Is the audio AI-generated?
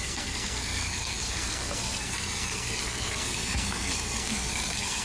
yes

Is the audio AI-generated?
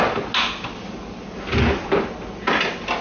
no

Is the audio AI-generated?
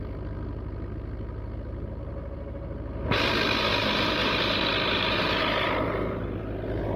no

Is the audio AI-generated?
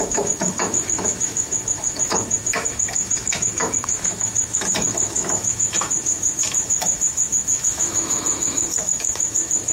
yes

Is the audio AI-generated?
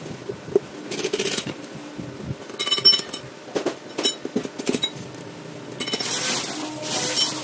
no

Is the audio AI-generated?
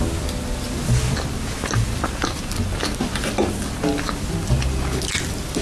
no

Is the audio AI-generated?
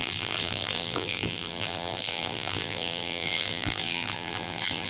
yes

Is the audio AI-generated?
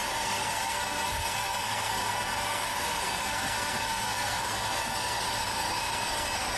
yes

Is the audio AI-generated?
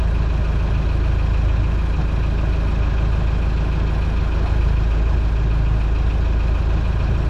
no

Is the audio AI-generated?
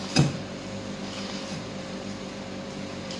yes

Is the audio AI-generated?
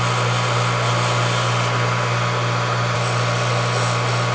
no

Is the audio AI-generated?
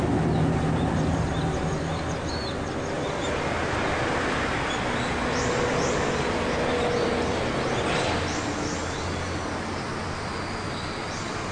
no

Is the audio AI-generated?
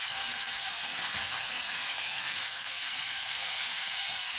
yes